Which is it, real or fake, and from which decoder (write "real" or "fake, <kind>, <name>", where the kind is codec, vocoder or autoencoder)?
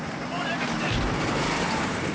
fake, vocoder, BigVGAN v2